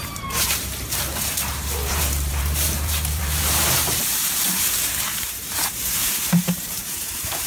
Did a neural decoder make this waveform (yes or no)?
yes